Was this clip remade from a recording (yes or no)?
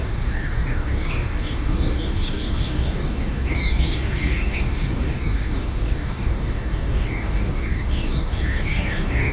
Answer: yes